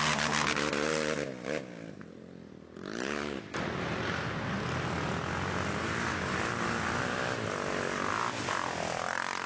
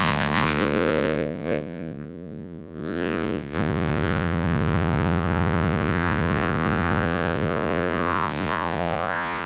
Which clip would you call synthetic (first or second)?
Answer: second